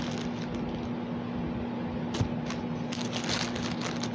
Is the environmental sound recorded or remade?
recorded